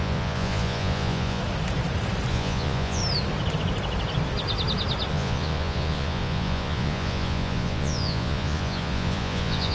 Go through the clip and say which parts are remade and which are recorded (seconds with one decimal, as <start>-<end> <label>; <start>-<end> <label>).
0.0-1.4 remade; 1.4-2.3 recorded; 2.3-3.0 remade; 3.0-5.1 recorded; 5.1-9.7 remade